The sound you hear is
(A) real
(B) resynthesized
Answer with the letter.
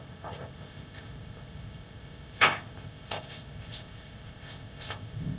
B